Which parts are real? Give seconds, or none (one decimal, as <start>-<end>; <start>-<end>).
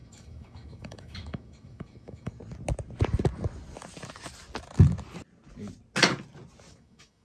2.4-6.7